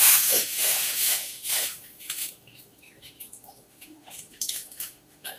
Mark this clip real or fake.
fake